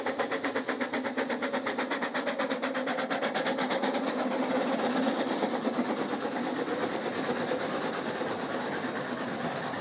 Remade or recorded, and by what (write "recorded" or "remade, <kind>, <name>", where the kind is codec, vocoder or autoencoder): recorded